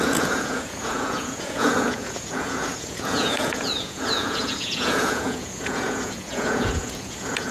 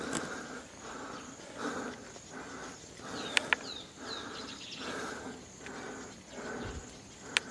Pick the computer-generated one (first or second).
first